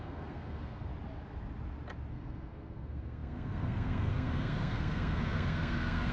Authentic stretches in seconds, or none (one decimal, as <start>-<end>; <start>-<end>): 0.9-2.1